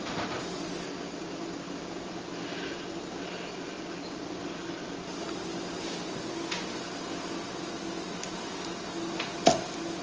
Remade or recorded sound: recorded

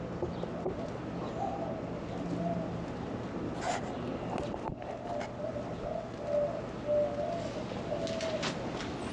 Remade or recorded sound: recorded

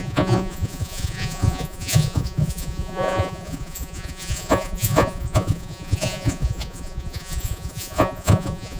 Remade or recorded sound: remade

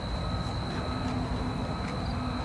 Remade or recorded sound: recorded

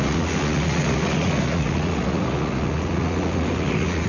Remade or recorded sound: remade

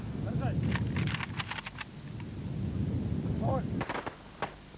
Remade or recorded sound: recorded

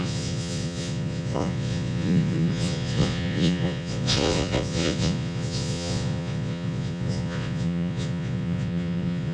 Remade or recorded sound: remade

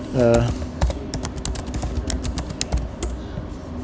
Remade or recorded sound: recorded